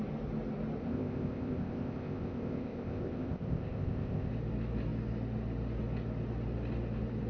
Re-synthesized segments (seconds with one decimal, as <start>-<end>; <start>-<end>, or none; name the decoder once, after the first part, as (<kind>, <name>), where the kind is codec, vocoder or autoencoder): 0.8-4.3 (codec, ZipCodec)